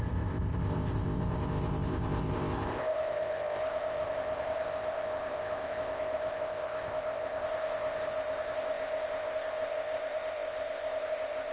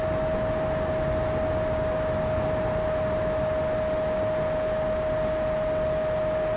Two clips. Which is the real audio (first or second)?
second